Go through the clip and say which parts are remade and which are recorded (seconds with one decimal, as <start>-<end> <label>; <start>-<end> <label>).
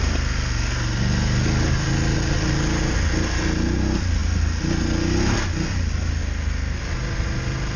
0.0-7.8 recorded